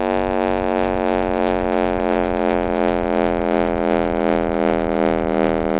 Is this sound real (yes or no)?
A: yes